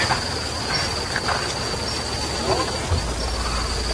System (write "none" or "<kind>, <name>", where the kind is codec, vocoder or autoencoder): none